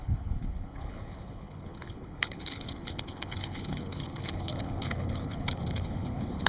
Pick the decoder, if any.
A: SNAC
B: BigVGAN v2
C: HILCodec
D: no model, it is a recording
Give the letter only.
C